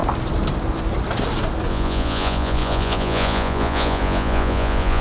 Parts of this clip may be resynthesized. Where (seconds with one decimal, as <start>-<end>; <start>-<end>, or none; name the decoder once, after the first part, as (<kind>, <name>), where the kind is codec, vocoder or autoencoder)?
1.7-5.0 (vocoder, Vocos)